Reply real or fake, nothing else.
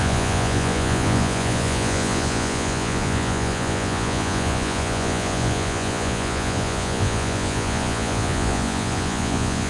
fake